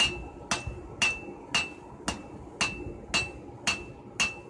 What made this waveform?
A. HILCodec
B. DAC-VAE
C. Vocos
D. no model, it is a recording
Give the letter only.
D